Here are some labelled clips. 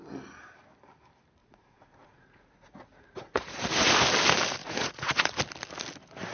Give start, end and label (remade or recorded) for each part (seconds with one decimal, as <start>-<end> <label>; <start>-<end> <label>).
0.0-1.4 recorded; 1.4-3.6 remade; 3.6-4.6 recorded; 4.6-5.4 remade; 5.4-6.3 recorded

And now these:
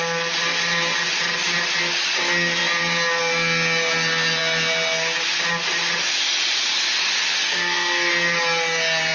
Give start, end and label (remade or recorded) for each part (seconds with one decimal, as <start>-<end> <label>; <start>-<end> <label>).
0.0-7.4 recorded; 7.4-8.1 remade; 8.1-9.1 recorded

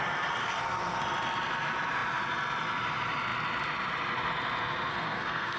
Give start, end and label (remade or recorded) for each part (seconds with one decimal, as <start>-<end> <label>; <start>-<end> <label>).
0.0-0.4 recorded; 0.4-1.0 remade; 1.0-4.9 recorded; 4.9-5.6 remade

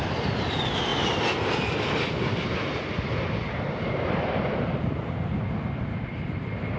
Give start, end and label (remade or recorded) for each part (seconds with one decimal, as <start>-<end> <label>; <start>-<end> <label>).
0.0-6.8 recorded

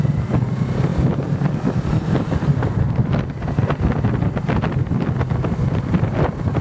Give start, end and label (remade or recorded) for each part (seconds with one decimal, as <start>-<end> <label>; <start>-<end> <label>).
0.0-6.6 recorded

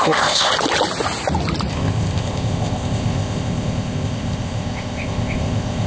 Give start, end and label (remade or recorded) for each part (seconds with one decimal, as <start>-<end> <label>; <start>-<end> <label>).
0.0-0.5 remade; 0.5-1.7 recorded; 1.7-5.9 remade

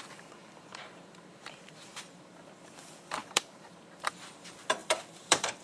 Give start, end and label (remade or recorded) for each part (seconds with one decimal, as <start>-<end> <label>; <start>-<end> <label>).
0.0-0.4 recorded; 0.4-2.4 remade; 2.4-3.2 recorded; 3.2-4.2 remade; 4.2-4.8 recorded; 4.8-5.6 remade